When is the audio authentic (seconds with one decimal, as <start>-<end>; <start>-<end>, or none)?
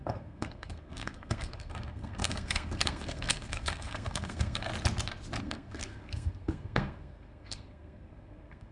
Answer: 4.7-5.4